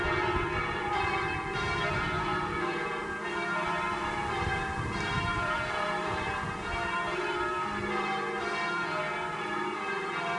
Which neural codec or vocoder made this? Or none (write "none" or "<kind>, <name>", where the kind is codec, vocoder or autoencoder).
vocoder, BigVGAN v2